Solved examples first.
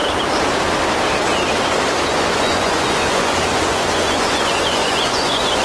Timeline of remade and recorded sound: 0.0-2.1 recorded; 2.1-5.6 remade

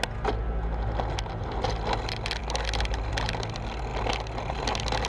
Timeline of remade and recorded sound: 0.0-5.1 recorded

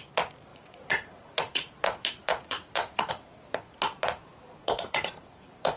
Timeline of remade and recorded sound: 0.0-0.5 recorded; 0.5-3.1 remade; 3.1-4.6 recorded; 4.6-5.8 remade

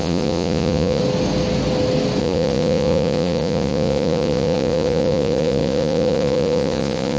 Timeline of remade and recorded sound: 0.0-1.0 remade; 1.0-2.2 recorded; 2.2-7.2 remade

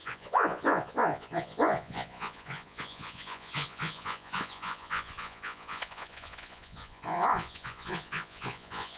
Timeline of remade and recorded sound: 0.0-9.0 remade

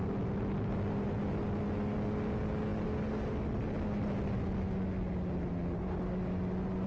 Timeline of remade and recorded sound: 0.0-6.9 recorded

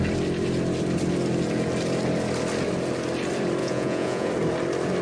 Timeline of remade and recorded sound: 0.0-3.6 recorded; 3.6-4.3 remade; 4.3-5.0 recorded

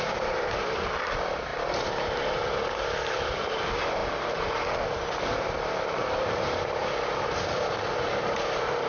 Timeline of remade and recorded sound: 0.0-8.9 recorded